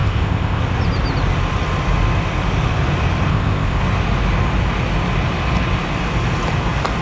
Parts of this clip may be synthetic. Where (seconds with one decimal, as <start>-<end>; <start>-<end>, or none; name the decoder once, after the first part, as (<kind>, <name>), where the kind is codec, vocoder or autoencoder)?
0.0-0.6 (codec, ZipCodec); 3.3-3.8